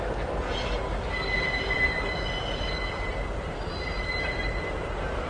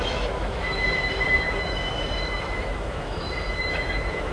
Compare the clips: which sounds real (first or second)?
first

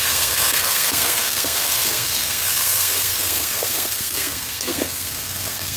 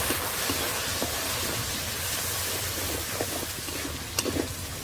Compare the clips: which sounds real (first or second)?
second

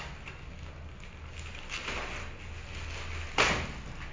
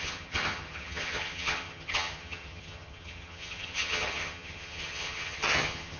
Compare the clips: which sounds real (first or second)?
first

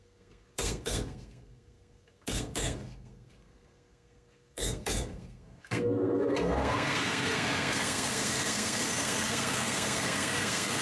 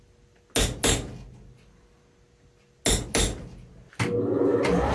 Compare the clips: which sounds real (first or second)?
second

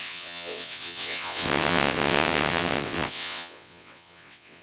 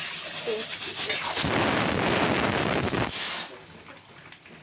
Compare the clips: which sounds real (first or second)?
second